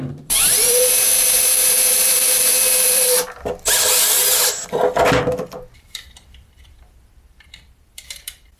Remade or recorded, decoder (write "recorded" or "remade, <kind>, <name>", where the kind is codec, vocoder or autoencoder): remade, vocoder, BigVGAN v2